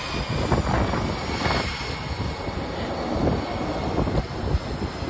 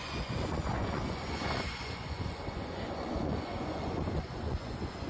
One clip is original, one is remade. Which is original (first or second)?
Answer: first